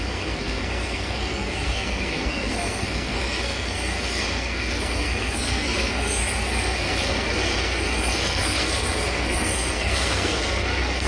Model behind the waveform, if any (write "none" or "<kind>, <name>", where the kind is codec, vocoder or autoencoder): codec, SNAC